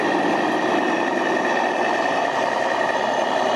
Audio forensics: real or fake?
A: fake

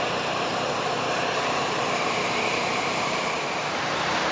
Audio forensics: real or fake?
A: fake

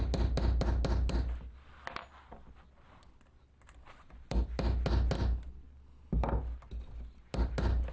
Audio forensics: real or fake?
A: real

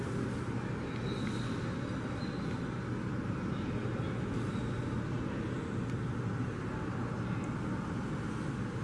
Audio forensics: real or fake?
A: real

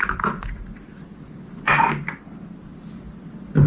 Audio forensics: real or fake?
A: real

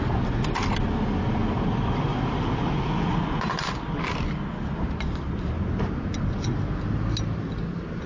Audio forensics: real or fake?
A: real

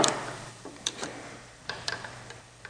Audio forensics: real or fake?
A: fake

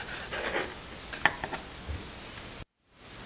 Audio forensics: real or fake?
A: real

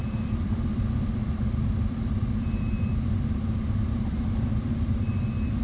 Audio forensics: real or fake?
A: fake